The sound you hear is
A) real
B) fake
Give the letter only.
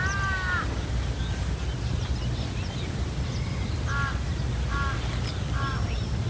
A